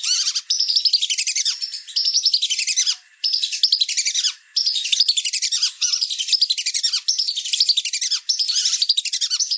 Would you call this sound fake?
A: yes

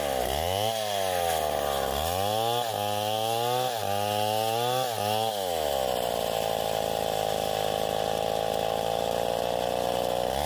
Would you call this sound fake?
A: no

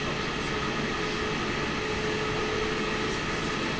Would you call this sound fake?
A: no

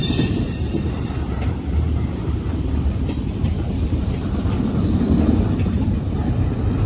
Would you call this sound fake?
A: yes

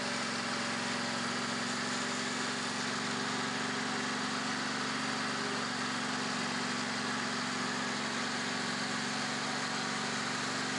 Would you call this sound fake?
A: no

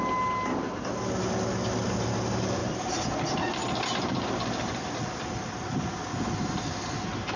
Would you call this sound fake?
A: no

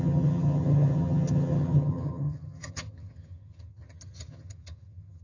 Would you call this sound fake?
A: yes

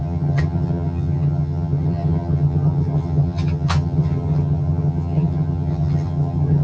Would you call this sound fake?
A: yes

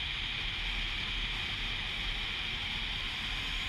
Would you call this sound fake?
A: no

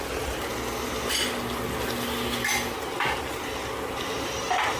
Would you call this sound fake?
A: no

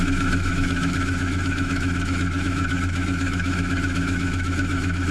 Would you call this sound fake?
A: yes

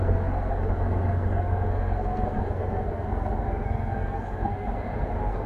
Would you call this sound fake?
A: yes